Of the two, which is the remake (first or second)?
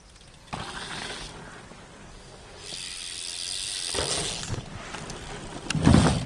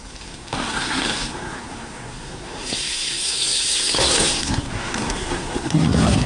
second